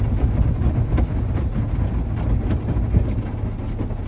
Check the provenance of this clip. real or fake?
real